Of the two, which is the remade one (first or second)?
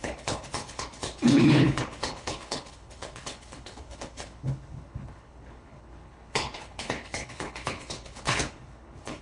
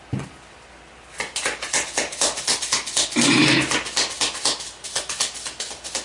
first